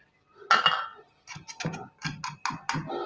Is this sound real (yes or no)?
yes